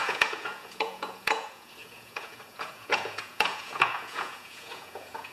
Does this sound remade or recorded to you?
remade